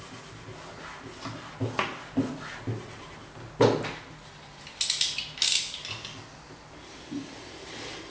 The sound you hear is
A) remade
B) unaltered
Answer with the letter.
B